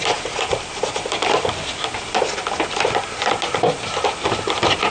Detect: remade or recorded recorded